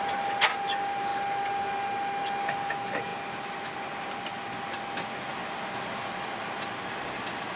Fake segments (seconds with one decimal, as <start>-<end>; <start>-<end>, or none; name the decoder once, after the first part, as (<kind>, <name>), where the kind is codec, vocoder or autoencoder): none